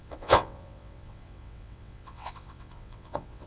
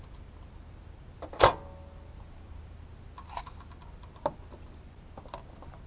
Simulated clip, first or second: first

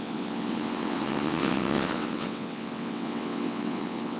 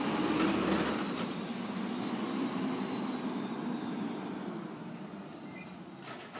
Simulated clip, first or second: first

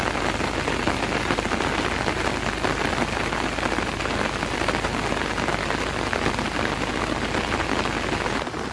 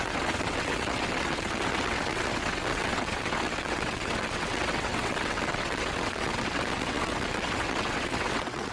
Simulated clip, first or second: second